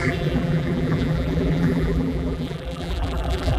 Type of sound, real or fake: fake